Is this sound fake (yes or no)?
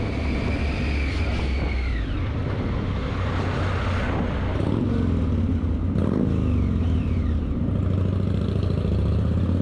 no